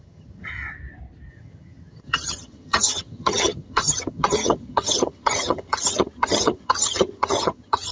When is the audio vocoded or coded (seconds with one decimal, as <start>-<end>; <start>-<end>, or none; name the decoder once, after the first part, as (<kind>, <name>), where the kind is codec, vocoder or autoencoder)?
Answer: 0.0-0.5 (vocoder, HiFi-GAN); 1.3-7.9